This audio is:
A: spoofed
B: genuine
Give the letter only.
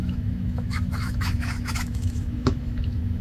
A